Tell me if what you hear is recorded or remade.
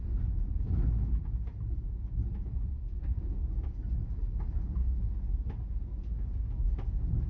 recorded